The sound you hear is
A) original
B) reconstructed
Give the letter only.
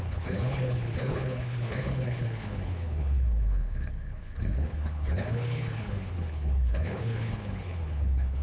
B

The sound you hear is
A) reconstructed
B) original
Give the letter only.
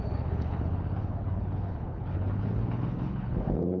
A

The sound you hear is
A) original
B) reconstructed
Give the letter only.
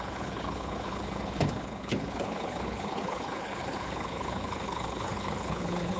B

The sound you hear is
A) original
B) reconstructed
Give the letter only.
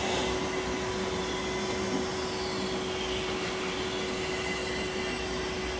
A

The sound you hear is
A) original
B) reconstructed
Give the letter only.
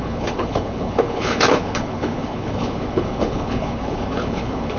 B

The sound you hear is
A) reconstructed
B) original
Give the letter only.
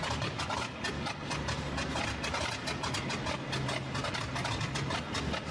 B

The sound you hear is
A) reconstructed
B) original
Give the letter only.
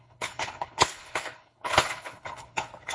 A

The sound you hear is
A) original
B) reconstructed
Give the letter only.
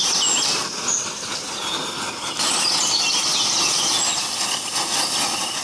A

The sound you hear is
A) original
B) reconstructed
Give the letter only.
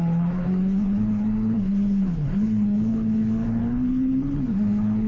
B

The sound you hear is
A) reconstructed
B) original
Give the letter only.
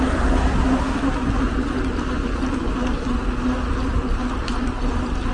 B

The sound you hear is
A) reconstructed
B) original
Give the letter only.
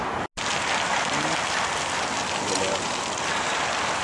B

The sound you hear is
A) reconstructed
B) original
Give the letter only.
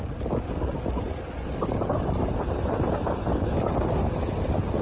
B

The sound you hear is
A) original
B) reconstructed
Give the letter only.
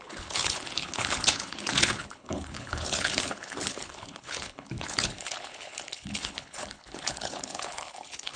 B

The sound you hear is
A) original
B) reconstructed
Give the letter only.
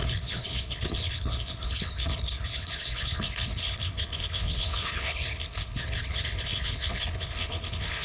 B